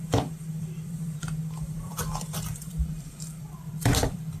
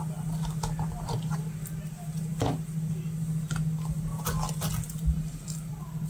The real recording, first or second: second